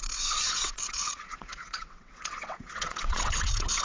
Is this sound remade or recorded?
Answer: remade